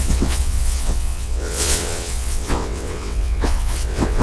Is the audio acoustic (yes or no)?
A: no